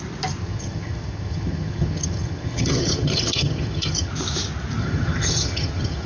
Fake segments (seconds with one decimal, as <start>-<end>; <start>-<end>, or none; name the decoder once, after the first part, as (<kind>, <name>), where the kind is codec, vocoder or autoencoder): 0.4-4.1 (vocoder, HiFi-GAN); 4.8-6.1